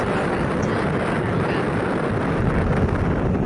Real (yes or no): yes